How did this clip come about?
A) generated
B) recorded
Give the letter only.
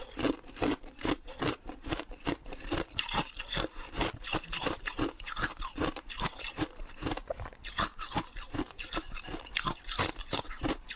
A